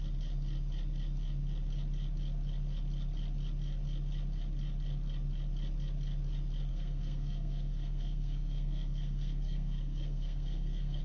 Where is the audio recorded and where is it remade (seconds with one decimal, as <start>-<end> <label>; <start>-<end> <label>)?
0.0-6.7 recorded; 6.7-11.0 remade